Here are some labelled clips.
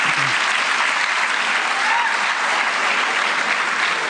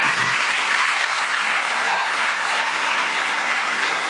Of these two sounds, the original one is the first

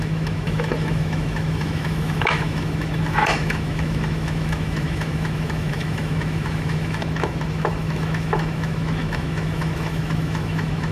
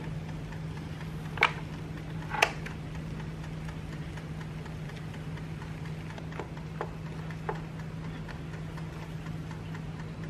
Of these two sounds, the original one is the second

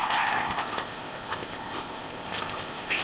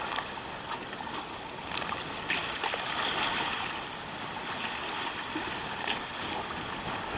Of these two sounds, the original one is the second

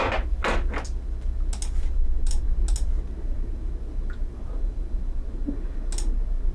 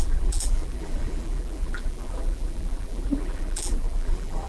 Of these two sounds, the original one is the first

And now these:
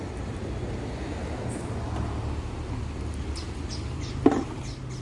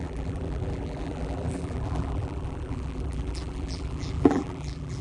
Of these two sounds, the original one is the first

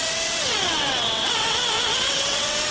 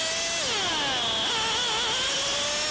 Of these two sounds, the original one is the second